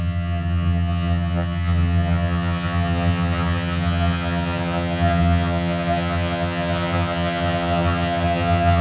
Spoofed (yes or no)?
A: yes